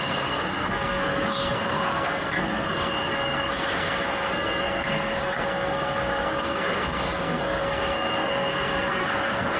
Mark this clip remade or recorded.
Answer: remade